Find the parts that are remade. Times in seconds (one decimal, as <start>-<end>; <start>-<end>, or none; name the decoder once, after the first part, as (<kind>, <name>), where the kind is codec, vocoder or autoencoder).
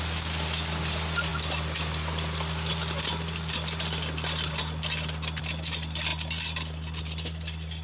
none